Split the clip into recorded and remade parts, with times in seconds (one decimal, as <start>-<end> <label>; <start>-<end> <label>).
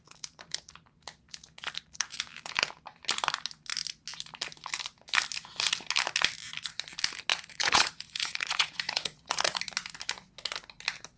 0.0-7.3 recorded; 7.3-9.6 remade; 9.6-11.2 recorded